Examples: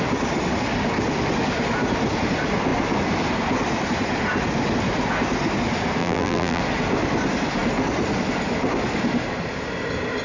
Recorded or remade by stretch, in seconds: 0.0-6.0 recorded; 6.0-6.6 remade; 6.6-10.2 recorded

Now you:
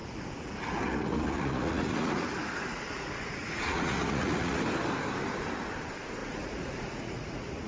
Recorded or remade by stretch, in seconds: 0.0-4.6 remade; 4.6-6.2 recorded; 6.2-7.7 remade

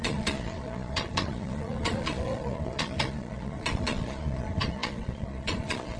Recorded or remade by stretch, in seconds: 0.0-6.0 remade

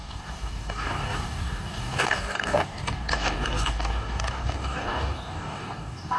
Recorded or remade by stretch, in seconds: 0.0-6.2 remade

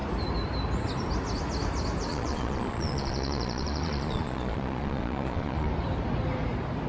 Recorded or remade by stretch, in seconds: 0.0-2.1 recorded; 2.1-5.7 remade; 5.7-6.9 recorded

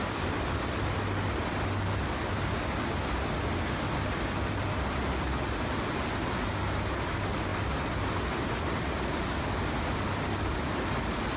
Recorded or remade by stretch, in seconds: 0.0-11.4 recorded